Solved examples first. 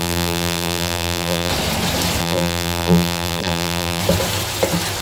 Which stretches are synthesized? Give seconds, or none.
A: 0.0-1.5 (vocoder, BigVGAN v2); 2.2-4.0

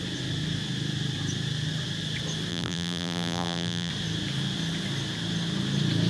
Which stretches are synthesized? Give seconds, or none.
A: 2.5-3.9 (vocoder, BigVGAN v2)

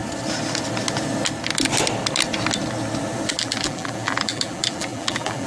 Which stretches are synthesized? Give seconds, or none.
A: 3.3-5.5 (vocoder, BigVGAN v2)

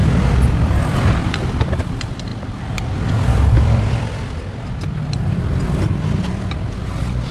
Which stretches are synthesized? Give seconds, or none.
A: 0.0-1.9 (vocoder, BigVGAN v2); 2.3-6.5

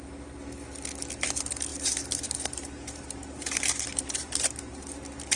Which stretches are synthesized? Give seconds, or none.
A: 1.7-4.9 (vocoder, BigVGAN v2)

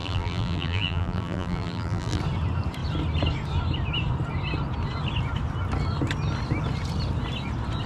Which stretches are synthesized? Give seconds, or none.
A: 0.0-2.2 (vocoder, BigVGAN v2)